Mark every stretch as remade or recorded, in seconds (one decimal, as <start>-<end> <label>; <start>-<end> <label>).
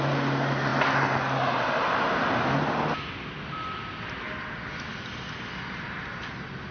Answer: 0.0-6.7 recorded